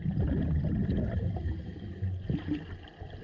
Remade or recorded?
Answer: recorded